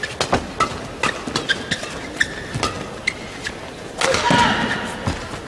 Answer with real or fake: real